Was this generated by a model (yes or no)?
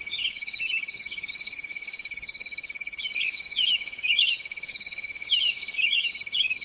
yes